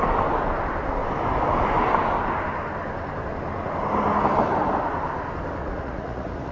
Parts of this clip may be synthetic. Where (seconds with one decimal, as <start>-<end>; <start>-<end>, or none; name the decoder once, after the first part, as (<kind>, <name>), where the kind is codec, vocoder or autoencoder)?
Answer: 5.6-6.5 (vocoder, Vocos)